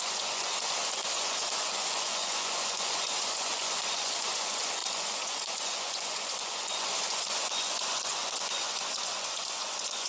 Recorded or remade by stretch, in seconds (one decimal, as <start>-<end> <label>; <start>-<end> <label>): 0.0-10.1 remade